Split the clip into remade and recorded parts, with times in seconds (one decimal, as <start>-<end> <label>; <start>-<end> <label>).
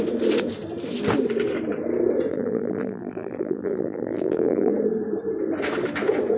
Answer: 0.0-2.3 recorded; 2.3-4.7 remade; 4.7-6.4 recorded